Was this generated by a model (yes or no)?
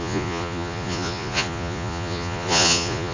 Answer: yes